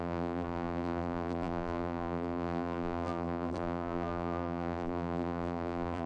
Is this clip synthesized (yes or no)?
yes